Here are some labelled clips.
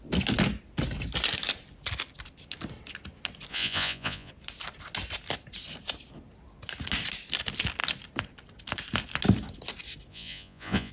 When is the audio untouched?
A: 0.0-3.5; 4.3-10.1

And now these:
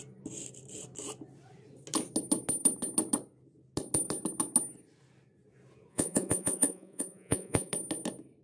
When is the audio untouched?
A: 0.0-5.9; 7.7-8.4